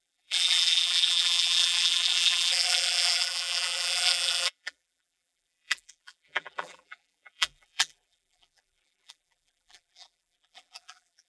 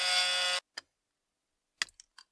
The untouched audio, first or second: second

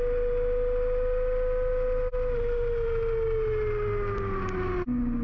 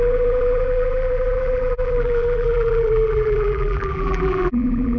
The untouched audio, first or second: first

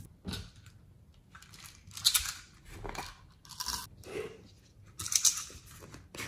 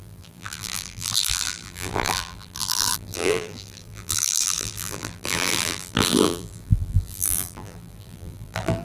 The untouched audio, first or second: first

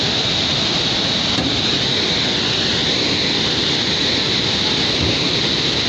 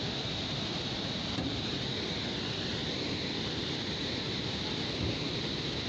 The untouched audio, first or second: first